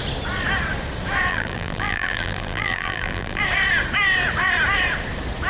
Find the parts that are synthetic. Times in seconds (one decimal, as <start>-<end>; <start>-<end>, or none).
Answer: 1.3-3.4